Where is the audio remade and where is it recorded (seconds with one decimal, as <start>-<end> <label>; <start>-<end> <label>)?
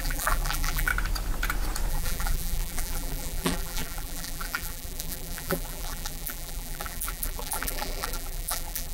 0.0-0.9 remade; 0.9-1.9 recorded; 1.9-8.9 remade